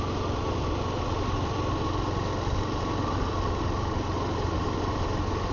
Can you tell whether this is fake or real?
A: real